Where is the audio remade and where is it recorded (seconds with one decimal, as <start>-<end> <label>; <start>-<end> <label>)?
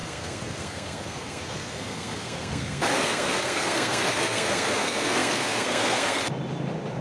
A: 0.0-6.2 remade; 6.2-7.0 recorded